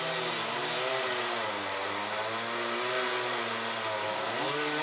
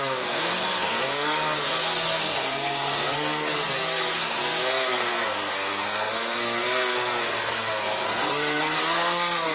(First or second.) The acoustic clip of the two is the first